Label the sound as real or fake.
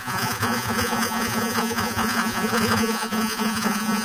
fake